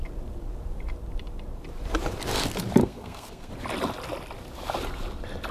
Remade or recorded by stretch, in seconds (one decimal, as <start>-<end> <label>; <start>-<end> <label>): 0.0-2.8 recorded; 2.8-3.5 remade; 3.5-5.5 recorded